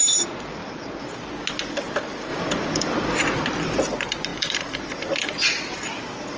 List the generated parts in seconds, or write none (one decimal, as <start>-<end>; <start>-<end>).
0.6-1.3; 2.3-3.8; 4.3-5.7